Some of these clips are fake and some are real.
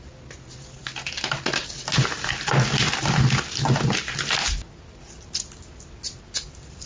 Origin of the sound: real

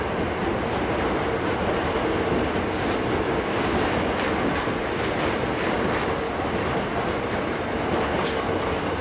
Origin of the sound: real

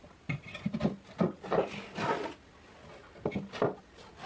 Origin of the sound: real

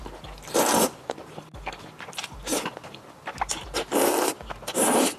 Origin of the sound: real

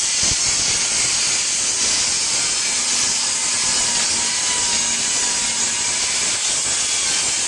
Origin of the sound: real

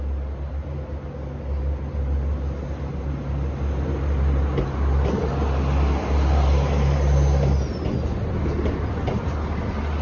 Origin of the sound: real